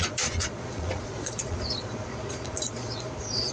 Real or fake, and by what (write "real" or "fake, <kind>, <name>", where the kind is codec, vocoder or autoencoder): fake, vocoder, Vocos